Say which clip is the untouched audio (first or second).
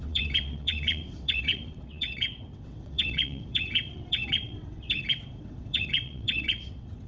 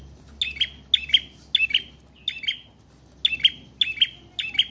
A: second